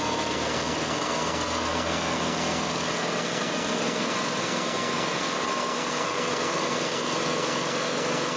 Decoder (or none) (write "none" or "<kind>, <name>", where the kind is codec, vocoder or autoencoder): codec, SNAC